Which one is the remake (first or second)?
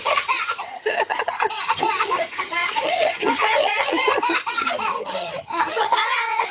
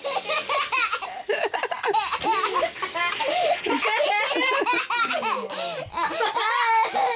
first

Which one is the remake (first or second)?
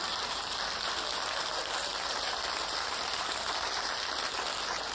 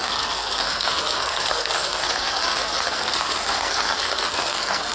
second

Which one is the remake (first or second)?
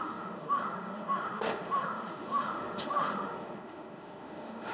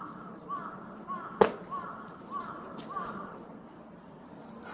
first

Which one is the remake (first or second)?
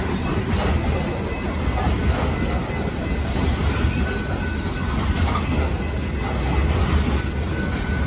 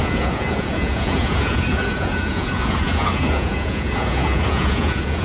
second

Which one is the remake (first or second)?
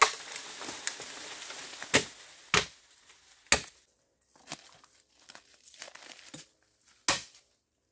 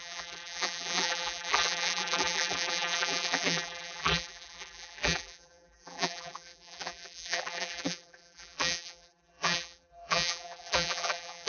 second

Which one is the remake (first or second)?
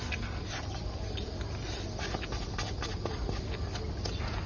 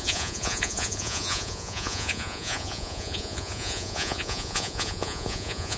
second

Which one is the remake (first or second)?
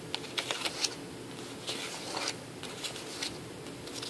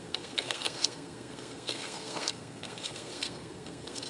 second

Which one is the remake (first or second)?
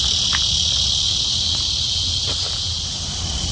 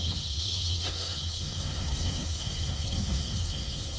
second